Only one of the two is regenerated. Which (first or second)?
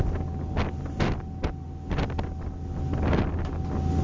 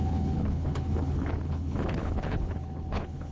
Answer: second